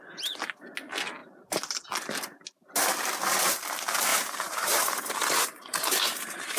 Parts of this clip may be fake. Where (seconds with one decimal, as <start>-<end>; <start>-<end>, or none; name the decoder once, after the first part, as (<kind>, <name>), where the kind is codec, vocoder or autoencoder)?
1.2-1.8 (vocoder, BigVGAN v2); 4.1-6.6